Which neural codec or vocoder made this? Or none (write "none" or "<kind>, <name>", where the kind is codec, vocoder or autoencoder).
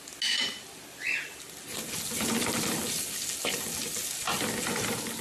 none